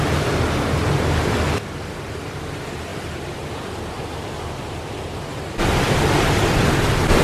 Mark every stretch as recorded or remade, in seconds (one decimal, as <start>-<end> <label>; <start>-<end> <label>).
0.0-7.2 recorded